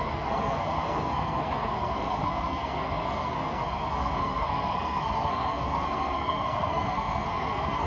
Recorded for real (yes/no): no